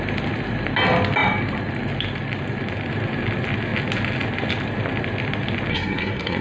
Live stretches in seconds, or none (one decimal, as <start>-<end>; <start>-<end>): 0.0-5.7